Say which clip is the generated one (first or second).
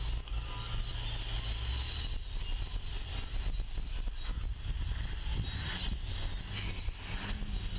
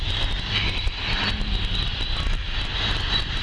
second